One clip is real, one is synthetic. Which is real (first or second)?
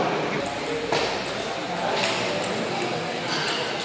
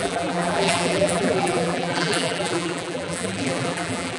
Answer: first